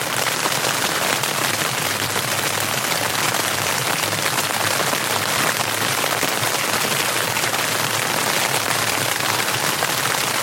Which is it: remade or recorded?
remade